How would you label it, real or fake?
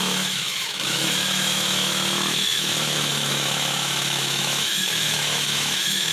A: fake